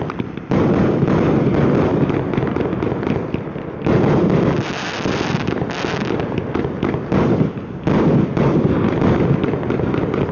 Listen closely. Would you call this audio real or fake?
real